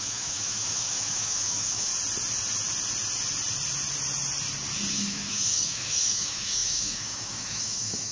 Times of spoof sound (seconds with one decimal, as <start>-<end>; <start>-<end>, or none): 0.0-1.9; 4.9-8.1